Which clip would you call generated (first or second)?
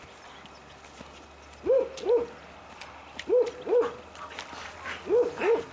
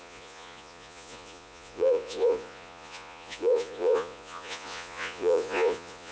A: second